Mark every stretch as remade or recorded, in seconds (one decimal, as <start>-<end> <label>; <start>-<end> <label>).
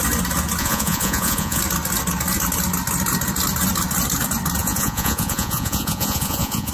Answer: 0.0-0.6 recorded; 0.6-1.6 remade; 1.6-4.6 recorded; 4.6-6.7 remade